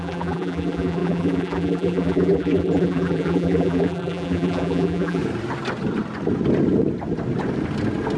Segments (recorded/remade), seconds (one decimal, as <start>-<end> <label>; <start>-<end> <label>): 0.0-5.2 remade; 5.2-8.2 recorded